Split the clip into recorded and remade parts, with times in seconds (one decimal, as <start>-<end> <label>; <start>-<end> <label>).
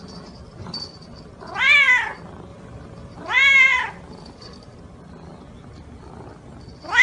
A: 0.0-2.5 recorded; 2.5-3.3 remade; 3.3-7.0 recorded